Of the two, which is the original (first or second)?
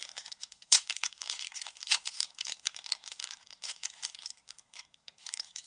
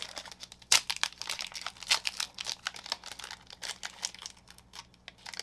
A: second